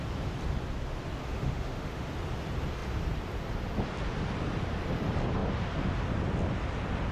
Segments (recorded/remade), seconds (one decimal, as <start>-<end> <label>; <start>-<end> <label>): 0.0-1.2 recorded; 1.2-2.1 remade; 2.1-7.1 recorded